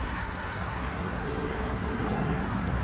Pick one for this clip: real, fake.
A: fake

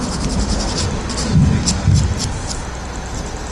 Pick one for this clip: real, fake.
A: real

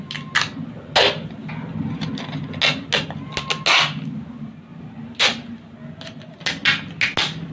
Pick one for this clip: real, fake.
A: real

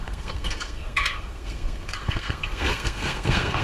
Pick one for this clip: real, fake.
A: fake